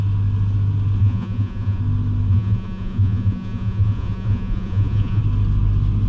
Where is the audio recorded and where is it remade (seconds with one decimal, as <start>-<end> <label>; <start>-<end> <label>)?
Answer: 0.0-1.0 recorded; 1.0-1.8 remade; 1.8-2.3 recorded; 2.3-5.2 remade; 5.2-6.1 recorded